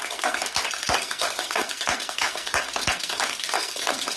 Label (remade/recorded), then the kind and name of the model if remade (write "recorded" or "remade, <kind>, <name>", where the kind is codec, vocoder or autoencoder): remade, codec, SNAC